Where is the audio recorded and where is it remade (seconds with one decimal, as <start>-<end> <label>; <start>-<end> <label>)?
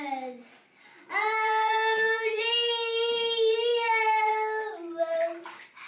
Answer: 0.0-1.2 recorded; 1.2-2.5 remade; 2.5-5.9 recorded